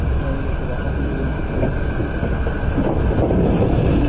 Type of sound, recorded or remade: recorded